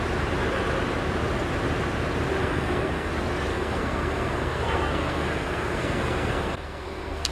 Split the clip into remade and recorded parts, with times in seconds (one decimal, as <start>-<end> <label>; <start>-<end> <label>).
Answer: 0.0-2.4 recorded; 2.4-3.1 remade; 3.1-3.5 recorded; 3.5-7.3 remade